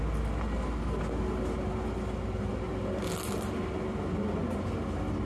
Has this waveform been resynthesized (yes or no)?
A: no